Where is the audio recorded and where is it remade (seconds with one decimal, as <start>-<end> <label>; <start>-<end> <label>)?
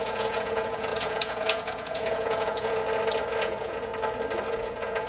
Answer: 0.0-2.8 remade; 2.8-3.4 recorded; 3.4-3.9 remade; 3.9-4.5 recorded; 4.5-5.1 remade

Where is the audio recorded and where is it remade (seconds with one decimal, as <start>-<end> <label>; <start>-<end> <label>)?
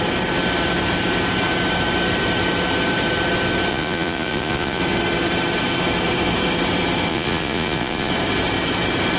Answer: 0.0-3.7 recorded; 3.7-4.8 remade; 4.8-7.1 recorded; 7.1-8.1 remade; 8.1-9.2 recorded